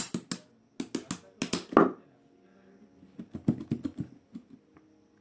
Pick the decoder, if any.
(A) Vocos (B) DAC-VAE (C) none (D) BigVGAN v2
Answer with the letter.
C